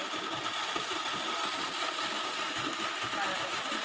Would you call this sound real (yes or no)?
yes